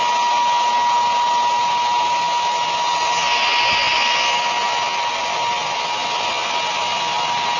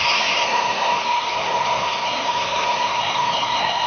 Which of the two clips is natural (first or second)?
first